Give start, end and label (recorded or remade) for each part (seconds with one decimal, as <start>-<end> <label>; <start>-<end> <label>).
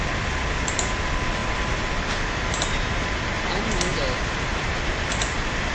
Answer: 0.0-5.7 recorded